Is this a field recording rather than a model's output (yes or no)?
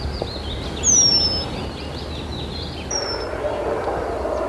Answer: yes